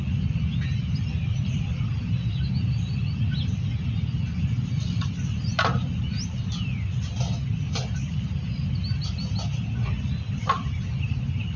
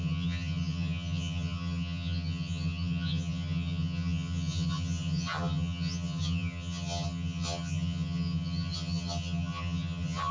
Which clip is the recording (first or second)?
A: first